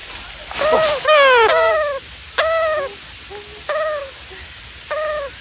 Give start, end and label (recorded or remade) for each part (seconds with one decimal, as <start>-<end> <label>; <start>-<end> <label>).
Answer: 0.0-5.4 recorded